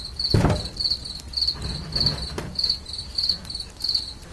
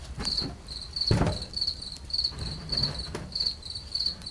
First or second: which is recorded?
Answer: first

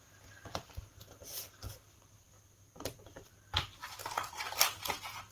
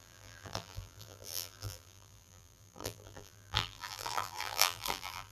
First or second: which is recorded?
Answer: first